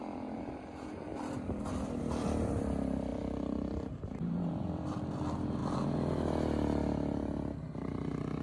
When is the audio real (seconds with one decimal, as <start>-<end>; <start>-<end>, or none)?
3.1-4.0; 5.6-8.4